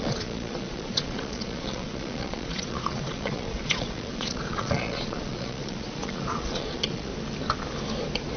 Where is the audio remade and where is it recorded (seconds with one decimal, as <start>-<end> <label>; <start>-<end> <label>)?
0.0-7.1 remade; 7.1-8.4 recorded